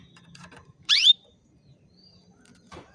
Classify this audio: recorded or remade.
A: remade